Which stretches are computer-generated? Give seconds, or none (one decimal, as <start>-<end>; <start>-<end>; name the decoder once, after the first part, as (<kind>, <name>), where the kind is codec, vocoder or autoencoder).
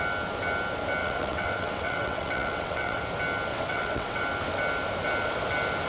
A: 1.0-3.0 (vocoder, WaveNeXt); 3.5-4.2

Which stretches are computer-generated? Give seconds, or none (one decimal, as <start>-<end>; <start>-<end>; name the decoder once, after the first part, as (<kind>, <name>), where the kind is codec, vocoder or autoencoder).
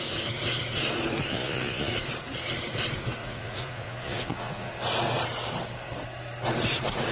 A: 1.3-1.9 (vocoder, Vocos); 3.2-4.7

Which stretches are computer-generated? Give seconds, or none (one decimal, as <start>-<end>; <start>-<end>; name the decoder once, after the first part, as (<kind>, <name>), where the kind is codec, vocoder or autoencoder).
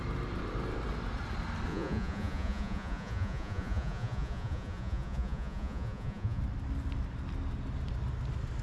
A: 1.7-6.4 (vocoder, Vocos)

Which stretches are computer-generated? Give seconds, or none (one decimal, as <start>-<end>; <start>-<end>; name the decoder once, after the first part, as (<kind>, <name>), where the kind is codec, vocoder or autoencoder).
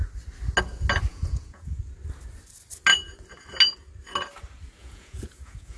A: 1.1-1.8 (vocoder, Vocos); 4.8-5.8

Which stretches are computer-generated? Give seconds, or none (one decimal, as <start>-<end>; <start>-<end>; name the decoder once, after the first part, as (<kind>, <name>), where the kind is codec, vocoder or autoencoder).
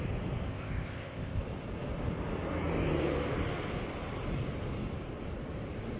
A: 0.5-1.4 (codec, ZipCodec)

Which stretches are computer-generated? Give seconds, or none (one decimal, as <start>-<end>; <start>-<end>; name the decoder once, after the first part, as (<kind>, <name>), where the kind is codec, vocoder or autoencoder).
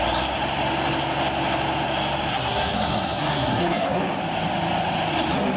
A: 2.3-4.0 (codec, SNAC)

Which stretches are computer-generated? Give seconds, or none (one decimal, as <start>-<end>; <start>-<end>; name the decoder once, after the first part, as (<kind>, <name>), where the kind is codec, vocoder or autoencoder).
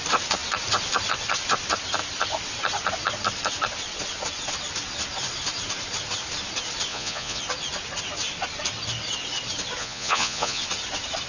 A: 6.9-7.4 (vocoder, Vocos); 9.8-10.6